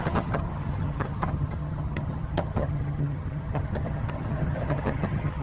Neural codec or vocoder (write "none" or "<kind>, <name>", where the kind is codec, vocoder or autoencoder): vocoder, HiFi-GAN